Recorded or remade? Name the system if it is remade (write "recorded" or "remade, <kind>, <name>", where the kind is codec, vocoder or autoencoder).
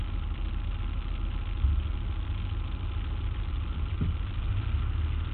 recorded